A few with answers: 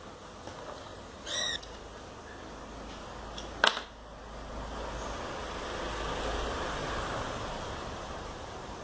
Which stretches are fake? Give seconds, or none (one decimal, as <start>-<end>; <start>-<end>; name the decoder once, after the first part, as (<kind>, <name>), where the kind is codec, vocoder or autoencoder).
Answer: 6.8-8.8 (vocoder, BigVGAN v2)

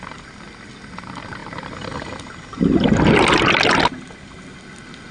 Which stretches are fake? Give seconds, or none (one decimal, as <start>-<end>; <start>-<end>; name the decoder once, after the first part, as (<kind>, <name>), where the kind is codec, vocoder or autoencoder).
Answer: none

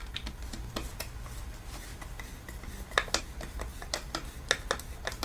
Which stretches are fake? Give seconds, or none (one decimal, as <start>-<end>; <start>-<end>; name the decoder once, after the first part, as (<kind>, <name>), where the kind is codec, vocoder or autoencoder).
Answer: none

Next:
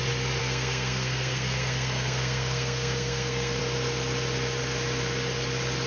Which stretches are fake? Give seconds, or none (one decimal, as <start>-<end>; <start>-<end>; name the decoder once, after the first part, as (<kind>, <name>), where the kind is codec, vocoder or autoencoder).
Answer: 0.4-3.6 (codec, SNAC)

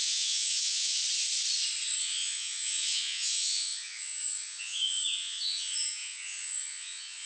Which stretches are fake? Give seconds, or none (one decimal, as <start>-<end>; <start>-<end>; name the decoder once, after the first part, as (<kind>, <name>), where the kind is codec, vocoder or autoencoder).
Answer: 0.0-1.0 (vocoder, Vocos); 2.0-7.3

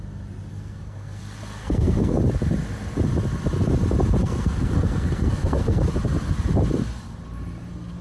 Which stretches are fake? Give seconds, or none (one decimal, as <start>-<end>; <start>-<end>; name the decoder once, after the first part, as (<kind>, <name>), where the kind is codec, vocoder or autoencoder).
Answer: 0.5-1.2 (codec, SNAC); 1.6-2.2; 4.2-5.9

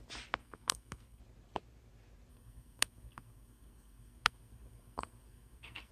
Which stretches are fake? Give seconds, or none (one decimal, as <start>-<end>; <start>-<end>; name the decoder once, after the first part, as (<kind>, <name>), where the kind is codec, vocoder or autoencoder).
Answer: 0.4-1.2 (codec, SNAC); 2.3-5.9

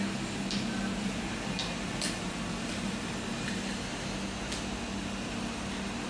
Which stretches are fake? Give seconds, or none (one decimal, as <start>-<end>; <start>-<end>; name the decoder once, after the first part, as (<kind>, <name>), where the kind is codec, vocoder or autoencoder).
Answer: none